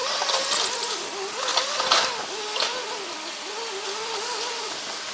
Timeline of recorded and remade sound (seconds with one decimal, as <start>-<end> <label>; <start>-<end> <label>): 0.0-5.1 recorded